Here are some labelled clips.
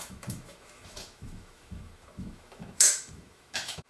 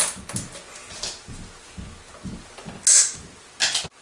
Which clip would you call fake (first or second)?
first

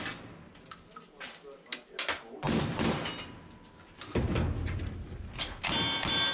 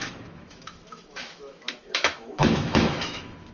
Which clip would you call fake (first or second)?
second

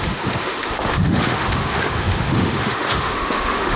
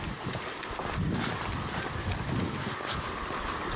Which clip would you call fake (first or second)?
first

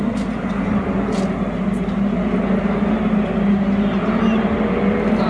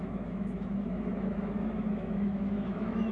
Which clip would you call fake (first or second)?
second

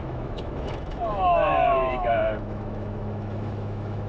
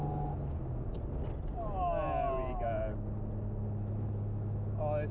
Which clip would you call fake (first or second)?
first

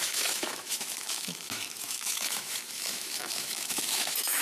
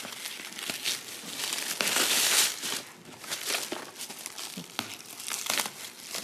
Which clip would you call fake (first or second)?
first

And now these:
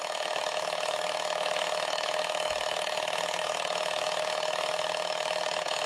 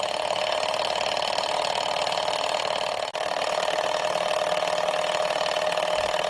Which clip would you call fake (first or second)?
first